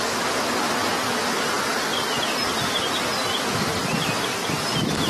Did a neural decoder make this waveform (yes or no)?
no